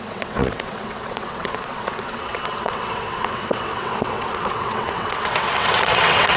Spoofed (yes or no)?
yes